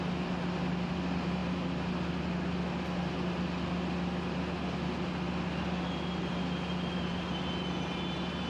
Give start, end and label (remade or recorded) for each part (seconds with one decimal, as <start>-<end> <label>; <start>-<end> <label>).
0.0-8.5 recorded